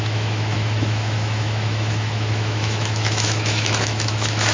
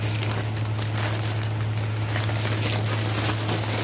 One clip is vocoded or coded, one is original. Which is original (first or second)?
second